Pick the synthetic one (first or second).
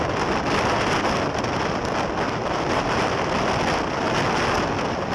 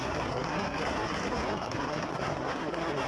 second